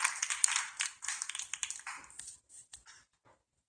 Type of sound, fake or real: real